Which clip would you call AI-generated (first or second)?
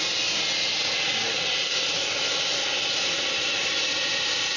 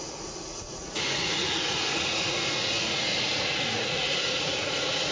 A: second